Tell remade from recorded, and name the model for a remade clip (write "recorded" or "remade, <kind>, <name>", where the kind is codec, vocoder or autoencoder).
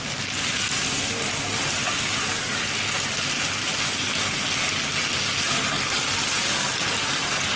recorded